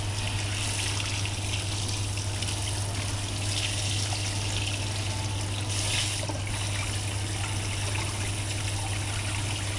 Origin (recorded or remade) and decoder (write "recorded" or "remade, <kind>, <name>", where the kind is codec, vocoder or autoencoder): recorded